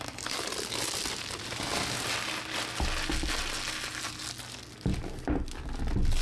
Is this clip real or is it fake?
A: real